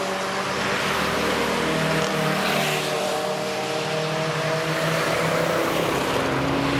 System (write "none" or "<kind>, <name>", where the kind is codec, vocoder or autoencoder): none